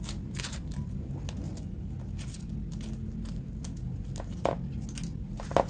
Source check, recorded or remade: recorded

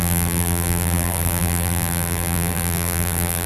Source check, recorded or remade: remade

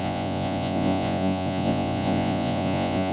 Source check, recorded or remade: remade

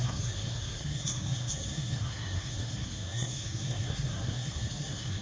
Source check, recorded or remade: remade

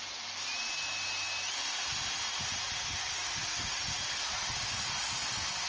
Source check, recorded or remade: recorded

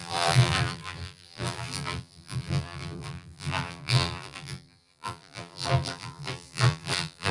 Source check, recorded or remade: remade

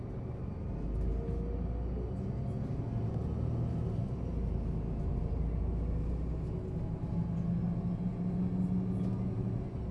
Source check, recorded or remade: recorded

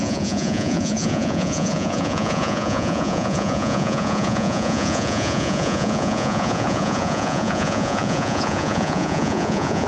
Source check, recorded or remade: remade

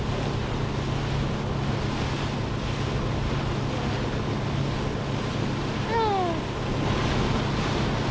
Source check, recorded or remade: recorded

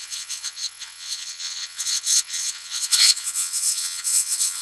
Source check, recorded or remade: remade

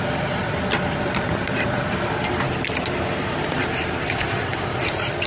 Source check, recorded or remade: recorded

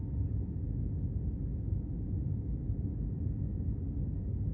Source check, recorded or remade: recorded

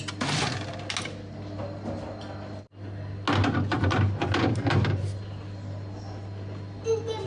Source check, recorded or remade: recorded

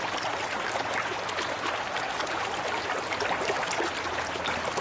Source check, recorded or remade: recorded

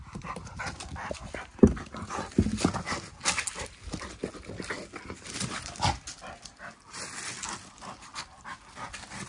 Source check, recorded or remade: recorded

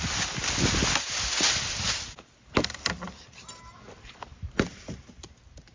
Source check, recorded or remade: recorded